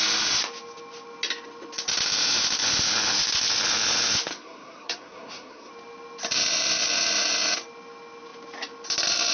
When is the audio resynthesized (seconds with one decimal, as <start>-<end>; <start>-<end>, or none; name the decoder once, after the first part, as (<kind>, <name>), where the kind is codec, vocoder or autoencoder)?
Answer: 4.3-5.7 (codec, SNAC)